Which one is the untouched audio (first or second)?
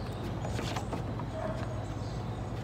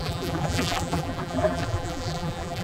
first